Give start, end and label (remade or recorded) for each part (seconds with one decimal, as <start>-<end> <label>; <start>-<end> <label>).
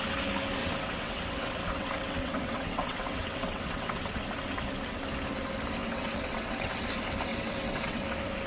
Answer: 0.0-0.6 recorded; 0.6-4.2 remade; 4.2-5.8 recorded; 5.8-6.7 remade; 6.7-7.3 recorded; 7.3-8.0 remade; 8.0-8.5 recorded